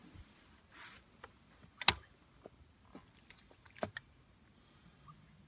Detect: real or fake real